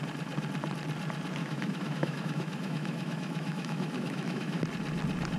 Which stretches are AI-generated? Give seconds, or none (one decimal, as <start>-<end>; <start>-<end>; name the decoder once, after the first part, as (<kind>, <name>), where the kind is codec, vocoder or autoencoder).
1.4-4.6 (autoencoder, DAC-VAE)